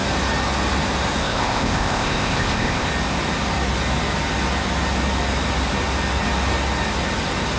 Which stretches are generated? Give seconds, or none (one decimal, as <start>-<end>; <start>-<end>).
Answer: 1.2-2.9

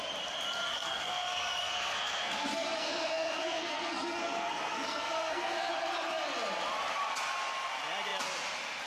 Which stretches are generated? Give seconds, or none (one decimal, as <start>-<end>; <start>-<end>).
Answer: 0.7-5.7

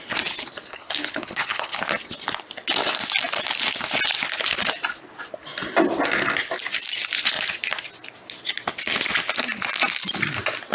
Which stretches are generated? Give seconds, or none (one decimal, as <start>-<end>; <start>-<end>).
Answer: 0.7-1.8

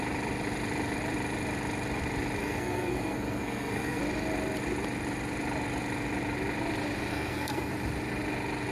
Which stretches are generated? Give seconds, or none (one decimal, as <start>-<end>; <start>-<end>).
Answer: 2.4-4.0; 7.1-7.7